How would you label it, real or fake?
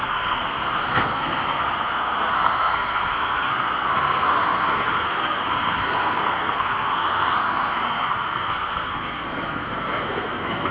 fake